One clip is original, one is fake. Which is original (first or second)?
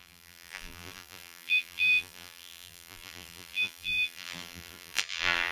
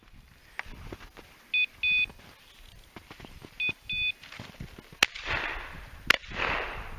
second